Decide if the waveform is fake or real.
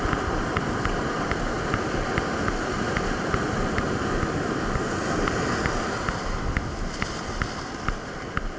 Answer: real